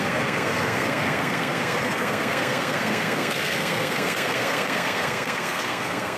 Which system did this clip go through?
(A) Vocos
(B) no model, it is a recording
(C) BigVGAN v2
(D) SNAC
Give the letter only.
D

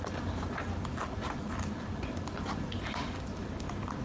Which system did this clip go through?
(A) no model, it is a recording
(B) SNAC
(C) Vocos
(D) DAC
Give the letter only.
A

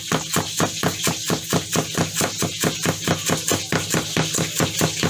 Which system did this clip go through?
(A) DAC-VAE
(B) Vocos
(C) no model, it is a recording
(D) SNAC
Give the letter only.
C